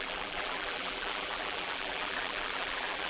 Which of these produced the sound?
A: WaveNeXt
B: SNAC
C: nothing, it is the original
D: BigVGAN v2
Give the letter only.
D